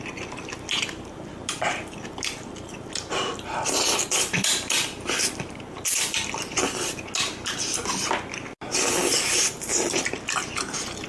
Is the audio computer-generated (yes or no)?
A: no